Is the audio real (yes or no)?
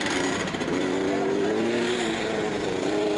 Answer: no